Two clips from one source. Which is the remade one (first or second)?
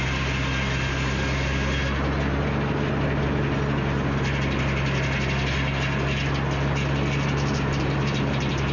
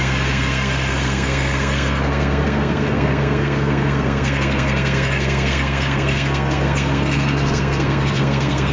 second